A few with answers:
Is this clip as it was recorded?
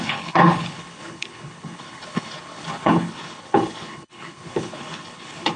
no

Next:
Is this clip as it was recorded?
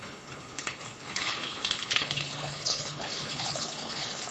no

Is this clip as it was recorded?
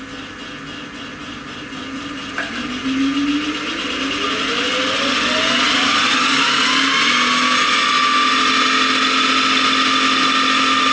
yes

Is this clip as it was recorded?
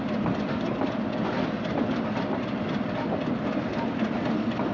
yes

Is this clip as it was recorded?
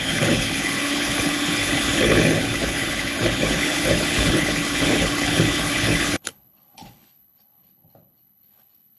no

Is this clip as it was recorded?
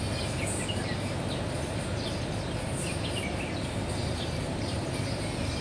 yes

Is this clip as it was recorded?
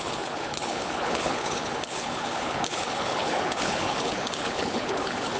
no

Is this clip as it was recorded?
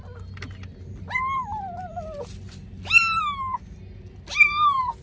yes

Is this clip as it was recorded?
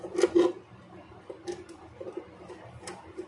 yes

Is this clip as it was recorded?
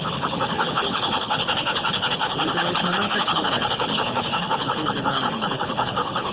no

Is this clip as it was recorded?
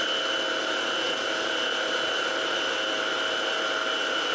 yes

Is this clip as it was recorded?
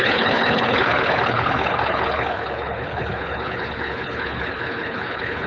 no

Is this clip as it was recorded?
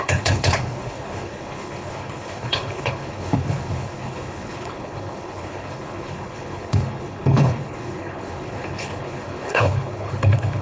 no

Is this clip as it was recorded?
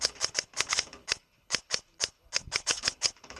no